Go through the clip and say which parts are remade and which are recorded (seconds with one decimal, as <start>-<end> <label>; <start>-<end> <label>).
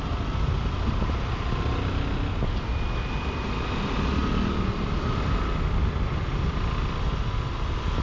0.0-8.0 recorded